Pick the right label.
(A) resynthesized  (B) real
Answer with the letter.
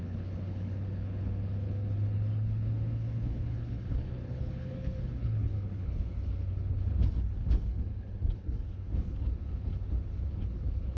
A